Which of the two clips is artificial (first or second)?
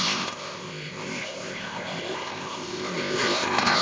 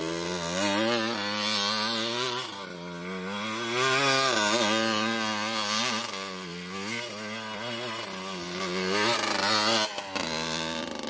first